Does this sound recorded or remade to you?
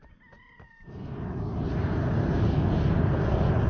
recorded